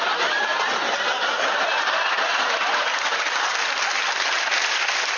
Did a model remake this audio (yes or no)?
no